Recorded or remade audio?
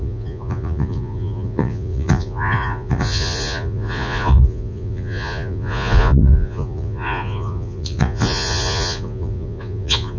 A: remade